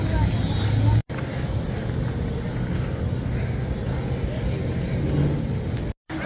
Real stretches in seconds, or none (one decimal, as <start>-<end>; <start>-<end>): 0.0-6.3